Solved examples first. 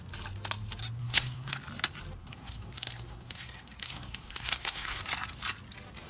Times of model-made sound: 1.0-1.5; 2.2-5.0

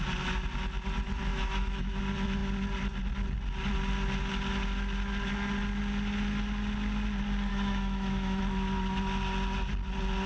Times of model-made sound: 1.3-2.0; 7.5-8.4